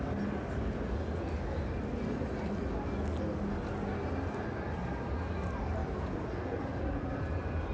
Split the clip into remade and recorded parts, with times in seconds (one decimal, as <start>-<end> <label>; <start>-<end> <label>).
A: 0.0-0.6 recorded; 0.6-1.3 remade; 1.3-5.8 recorded; 5.8-7.3 remade; 7.3-7.7 recorded